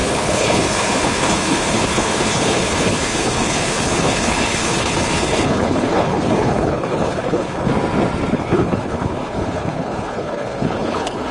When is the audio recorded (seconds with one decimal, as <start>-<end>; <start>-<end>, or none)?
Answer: 7.7-8.3